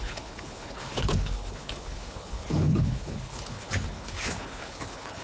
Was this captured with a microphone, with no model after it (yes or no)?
no